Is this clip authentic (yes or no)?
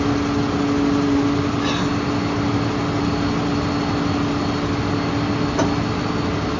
yes